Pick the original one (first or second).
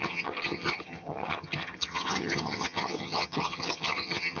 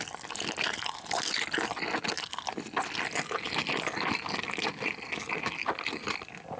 second